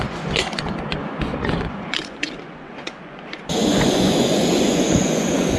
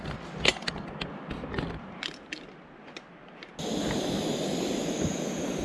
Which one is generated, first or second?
first